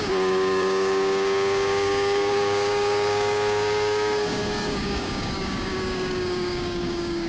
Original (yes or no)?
no